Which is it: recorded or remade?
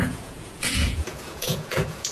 remade